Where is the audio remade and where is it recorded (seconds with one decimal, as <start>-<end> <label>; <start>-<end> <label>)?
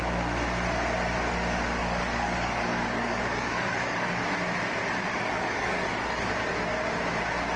0.0-1.8 recorded; 1.8-4.2 remade; 4.2-5.1 recorded; 5.1-6.2 remade; 6.2-7.6 recorded